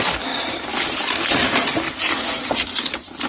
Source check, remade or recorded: recorded